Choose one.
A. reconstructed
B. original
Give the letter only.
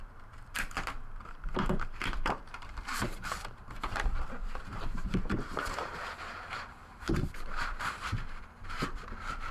A